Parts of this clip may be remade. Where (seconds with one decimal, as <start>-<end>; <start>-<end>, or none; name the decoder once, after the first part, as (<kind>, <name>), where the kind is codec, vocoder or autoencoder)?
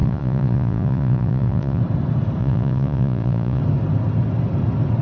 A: 0.0-1.8 (vocoder, Vocos); 2.4-3.6